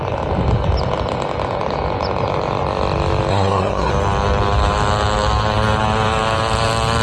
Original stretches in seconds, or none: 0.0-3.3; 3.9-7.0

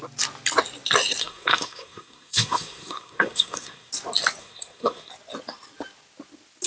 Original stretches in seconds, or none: 0.0-1.2; 3.9-4.4; 5.1-6.7